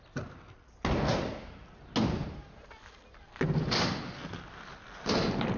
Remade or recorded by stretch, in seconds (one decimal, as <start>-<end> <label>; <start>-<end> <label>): 0.0-5.6 recorded